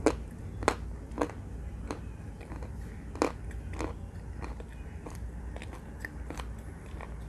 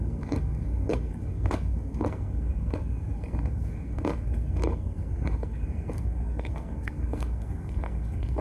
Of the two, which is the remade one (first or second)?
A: second